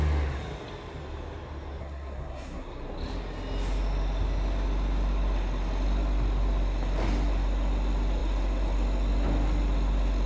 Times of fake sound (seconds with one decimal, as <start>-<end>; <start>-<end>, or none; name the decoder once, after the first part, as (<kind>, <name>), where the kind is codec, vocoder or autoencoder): 1.8-2.9 (codec, SNAC)